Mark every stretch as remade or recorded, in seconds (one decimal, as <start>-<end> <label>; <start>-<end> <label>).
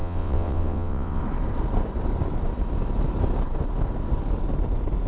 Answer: 0.0-1.2 remade; 1.2-5.1 recorded